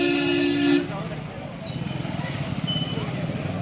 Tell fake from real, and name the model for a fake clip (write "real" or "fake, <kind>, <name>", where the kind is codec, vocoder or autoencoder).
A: real